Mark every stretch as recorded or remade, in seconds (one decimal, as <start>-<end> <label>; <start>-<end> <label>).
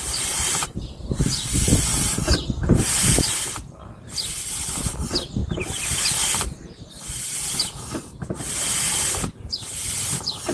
0.0-5.4 remade; 5.4-6.3 recorded; 6.3-10.5 remade